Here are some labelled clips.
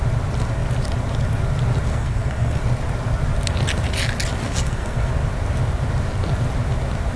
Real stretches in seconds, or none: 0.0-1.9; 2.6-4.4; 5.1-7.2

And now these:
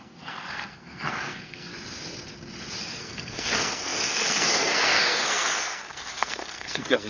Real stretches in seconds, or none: 1.7-2.8

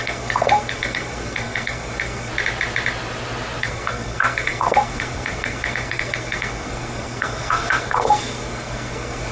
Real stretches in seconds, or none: 2.3-3.6

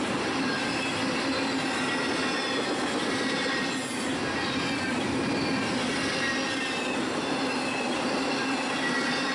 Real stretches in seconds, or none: 0.0-9.3

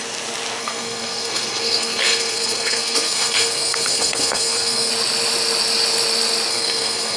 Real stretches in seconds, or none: 0.0-0.6; 4.9-6.5

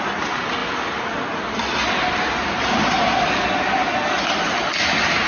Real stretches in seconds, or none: 0.0-5.3